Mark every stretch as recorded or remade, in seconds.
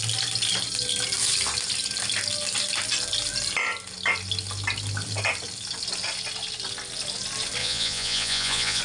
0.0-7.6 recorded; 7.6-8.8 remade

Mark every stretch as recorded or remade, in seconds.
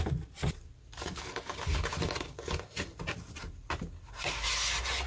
0.0-5.1 recorded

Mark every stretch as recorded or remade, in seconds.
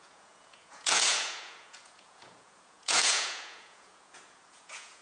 0.0-5.0 remade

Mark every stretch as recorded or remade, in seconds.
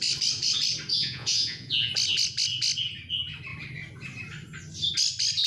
0.0-1.0 recorded; 1.0-1.9 remade; 1.9-5.5 recorded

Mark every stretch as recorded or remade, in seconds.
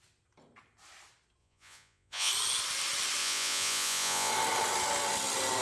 0.0-1.4 recorded; 1.4-2.3 remade; 2.3-3.2 recorded; 3.2-4.3 remade; 4.3-5.6 recorded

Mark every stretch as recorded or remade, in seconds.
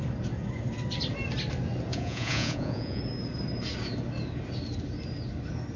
0.0-1.9 recorded; 1.9-3.0 remade; 3.0-5.8 recorded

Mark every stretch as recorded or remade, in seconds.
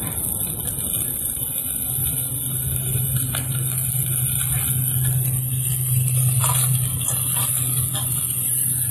0.0-8.9 recorded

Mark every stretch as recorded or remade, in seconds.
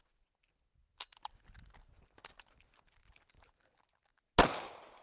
0.0-5.0 recorded